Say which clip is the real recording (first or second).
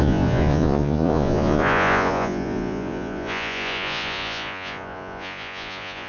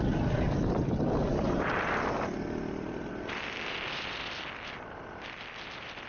second